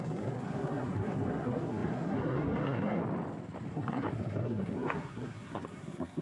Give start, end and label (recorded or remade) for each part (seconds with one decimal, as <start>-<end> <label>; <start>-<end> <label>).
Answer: 0.0-3.0 remade; 3.0-3.7 recorded; 3.7-6.2 remade